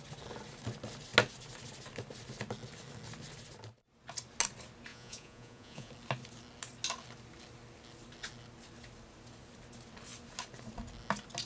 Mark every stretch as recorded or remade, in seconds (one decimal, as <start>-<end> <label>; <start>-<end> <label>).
0.0-4.9 recorded; 4.9-5.9 remade; 5.9-11.5 recorded